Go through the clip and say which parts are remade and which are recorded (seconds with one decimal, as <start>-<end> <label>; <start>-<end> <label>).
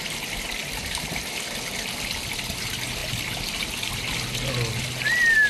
0.0-5.5 recorded